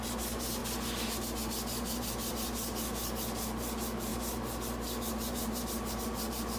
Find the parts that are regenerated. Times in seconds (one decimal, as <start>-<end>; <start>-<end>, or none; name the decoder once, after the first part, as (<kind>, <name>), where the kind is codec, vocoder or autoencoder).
none